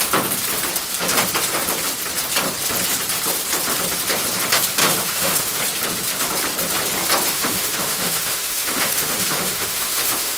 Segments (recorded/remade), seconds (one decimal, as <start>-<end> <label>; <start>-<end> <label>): 0.0-4.8 recorded; 4.8-5.6 remade; 5.6-7.3 recorded; 7.3-10.4 remade